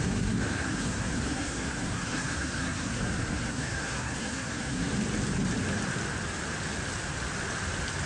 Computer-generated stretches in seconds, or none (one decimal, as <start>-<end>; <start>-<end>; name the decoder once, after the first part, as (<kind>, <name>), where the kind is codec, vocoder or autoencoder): 0.0-4.9 (codec, SNAC)